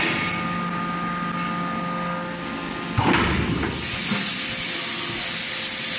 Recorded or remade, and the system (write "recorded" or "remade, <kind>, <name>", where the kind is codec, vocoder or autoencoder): recorded